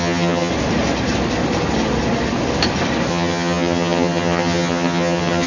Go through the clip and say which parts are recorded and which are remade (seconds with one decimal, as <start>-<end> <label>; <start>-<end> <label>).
0.0-0.5 remade; 0.5-3.1 recorded; 3.1-5.5 remade

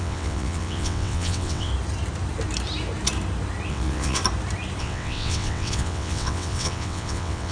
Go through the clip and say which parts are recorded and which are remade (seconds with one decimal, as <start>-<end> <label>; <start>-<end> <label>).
0.0-1.7 remade; 1.7-3.7 recorded; 3.7-4.2 remade; 4.2-4.8 recorded; 4.8-7.5 remade

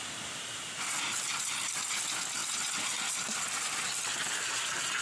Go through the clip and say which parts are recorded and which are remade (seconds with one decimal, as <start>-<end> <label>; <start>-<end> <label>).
0.0-5.0 recorded

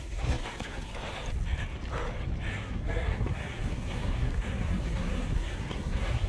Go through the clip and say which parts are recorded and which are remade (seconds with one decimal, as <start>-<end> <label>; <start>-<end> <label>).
0.0-0.9 remade; 0.9-2.5 recorded; 2.5-6.3 remade

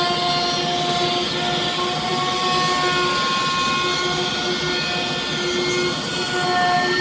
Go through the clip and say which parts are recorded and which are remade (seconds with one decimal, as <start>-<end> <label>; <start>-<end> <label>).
0.0-7.0 recorded